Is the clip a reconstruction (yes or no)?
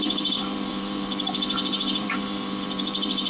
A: yes